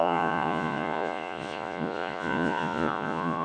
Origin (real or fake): fake